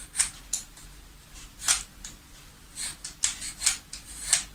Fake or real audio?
real